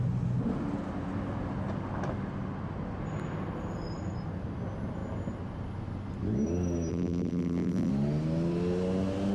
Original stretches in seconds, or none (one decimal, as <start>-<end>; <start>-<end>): 0.0-6.9; 7.9-9.3